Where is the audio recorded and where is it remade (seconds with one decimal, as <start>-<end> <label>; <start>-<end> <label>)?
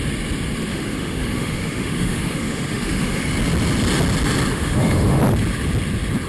0.0-0.7 recorded; 0.7-3.2 remade; 3.2-4.5 recorded; 4.5-5.2 remade; 5.2-6.3 recorded